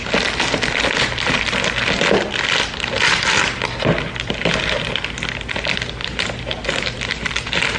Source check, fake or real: real